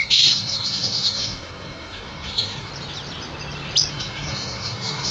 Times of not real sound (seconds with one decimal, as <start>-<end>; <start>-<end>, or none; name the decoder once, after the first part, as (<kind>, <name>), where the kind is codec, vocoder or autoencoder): 0.0-2.7 (codec, SNAC); 3.9-5.1